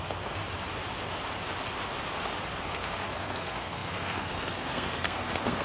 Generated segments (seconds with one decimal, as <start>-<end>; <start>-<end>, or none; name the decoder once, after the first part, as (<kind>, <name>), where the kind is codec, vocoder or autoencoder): 0.0-0.4 (codec, SNAC); 2.6-5.6

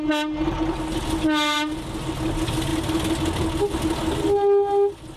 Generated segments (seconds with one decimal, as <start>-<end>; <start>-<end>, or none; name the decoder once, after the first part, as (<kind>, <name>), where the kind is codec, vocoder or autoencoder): none